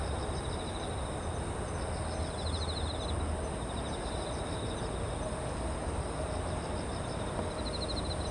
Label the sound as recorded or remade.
recorded